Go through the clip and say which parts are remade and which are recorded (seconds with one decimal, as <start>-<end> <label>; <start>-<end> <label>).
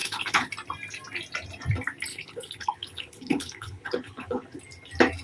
0.0-0.5 remade; 0.5-2.1 recorded; 2.1-4.6 remade; 4.6-5.2 recorded